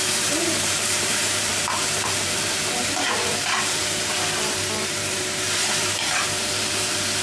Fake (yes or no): yes